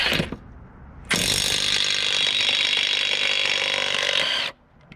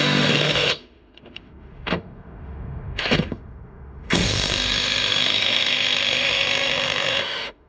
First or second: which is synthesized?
second